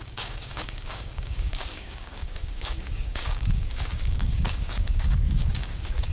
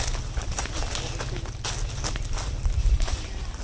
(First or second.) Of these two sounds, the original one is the second